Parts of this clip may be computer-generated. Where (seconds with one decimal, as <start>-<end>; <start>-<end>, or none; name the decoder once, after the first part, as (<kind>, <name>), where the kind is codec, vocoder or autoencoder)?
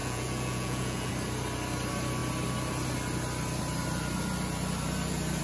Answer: 0.0-1.1 (vocoder, Vocos)